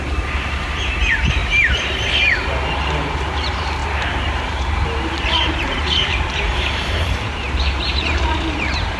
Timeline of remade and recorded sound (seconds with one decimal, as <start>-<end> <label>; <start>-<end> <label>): 0.0-1.4 remade; 1.4-3.2 recorded; 3.2-9.0 remade